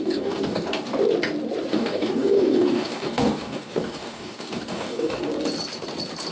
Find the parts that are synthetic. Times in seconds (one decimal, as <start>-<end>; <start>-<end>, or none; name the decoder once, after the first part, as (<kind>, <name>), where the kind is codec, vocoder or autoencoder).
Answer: 0.0-0.9 (codec, DAC); 1.7-5.3